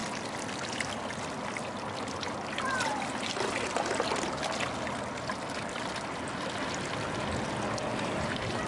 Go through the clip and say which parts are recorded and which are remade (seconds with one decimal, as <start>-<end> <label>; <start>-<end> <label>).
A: 0.0-7.9 recorded; 7.9-8.7 remade